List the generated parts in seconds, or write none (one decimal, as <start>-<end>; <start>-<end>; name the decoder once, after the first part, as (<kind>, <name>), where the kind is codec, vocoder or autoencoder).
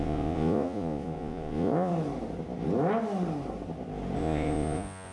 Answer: 0.0-1.9 (vocoder, Vocos); 4.2-5.1